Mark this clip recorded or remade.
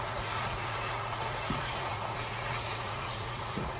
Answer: remade